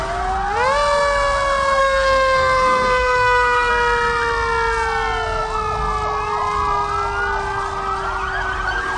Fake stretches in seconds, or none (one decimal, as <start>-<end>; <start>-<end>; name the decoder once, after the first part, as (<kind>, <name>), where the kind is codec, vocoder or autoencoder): 1.8-3.7 (codec, SNAC)